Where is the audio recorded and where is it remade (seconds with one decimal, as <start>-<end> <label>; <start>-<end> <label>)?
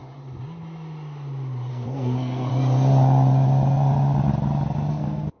0.0-1.7 recorded; 1.7-2.5 remade; 2.5-4.9 recorded; 4.9-5.4 remade